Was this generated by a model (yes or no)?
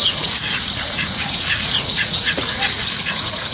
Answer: yes